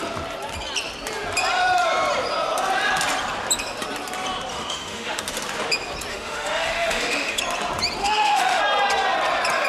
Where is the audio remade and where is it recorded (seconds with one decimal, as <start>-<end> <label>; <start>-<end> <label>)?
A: 0.0-4.5 recorded; 4.5-5.2 remade; 5.2-6.1 recorded; 6.1-7.4 remade; 7.4-8.0 recorded; 8.0-8.6 remade; 8.6-9.7 recorded